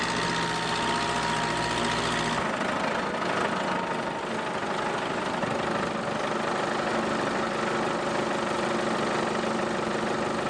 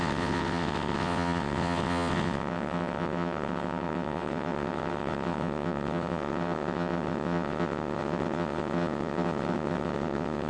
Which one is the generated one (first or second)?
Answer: second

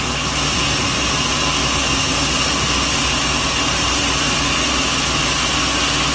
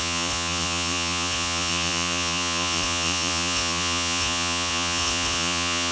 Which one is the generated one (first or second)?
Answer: second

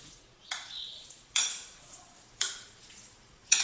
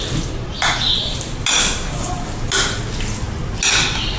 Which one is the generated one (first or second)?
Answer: first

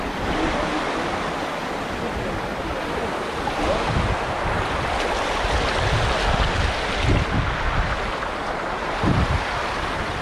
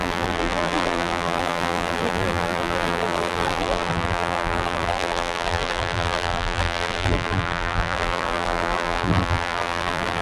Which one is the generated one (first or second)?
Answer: second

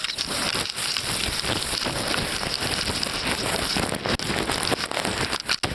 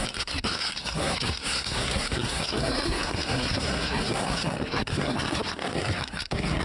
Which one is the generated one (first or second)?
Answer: second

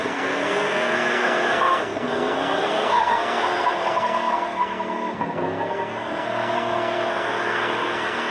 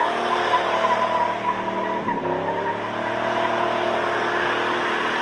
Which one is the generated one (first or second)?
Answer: first